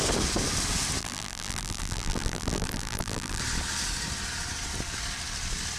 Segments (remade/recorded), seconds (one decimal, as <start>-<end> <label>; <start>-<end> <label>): 0.0-1.0 recorded; 1.0-3.4 remade; 3.4-5.8 recorded